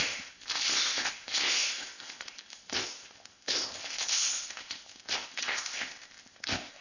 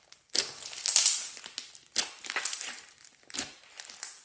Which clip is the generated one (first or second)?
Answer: first